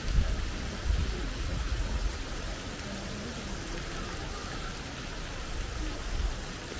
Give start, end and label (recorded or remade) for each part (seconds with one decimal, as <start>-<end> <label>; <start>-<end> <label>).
0.0-1.0 recorded; 1.0-2.2 remade; 2.2-6.8 recorded